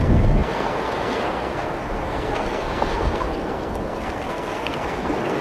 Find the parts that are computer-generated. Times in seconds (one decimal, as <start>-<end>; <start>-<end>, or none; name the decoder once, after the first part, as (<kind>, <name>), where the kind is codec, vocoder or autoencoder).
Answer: 0.0-5.4 (codec, SNAC)